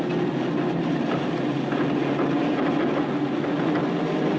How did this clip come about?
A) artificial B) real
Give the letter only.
B